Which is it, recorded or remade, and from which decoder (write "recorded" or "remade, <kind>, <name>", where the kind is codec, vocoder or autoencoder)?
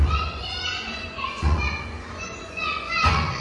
remade, vocoder, Vocos